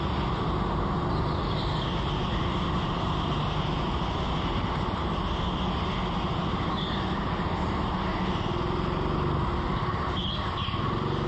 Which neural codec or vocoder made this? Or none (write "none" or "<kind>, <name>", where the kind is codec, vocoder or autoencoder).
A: none